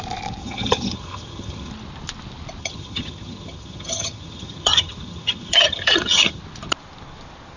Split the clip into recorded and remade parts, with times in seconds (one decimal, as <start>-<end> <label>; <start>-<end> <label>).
0.0-0.4 recorded; 0.4-1.7 remade; 1.7-2.6 recorded; 2.6-6.4 remade; 6.4-7.6 recorded